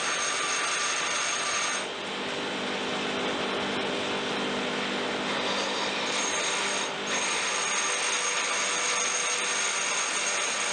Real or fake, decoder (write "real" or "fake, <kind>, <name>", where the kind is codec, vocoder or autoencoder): real